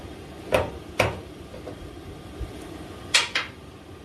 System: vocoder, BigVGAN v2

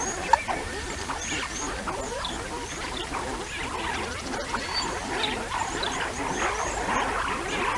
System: none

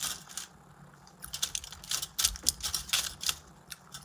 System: none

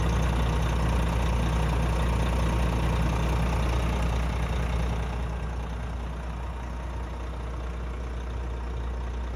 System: none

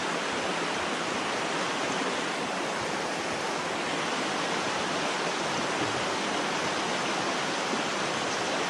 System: none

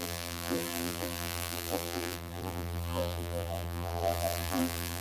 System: vocoder, BigVGAN v2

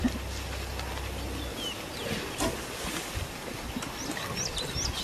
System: none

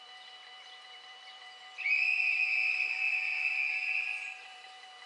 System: vocoder, BigVGAN v2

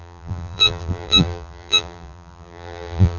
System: vocoder, BigVGAN v2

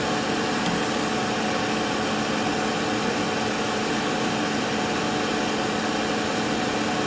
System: none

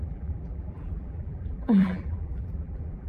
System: vocoder, BigVGAN v2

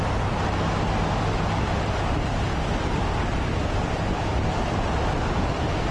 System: none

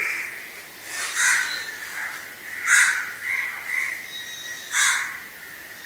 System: none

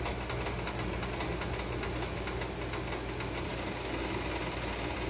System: none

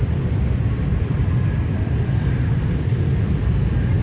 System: none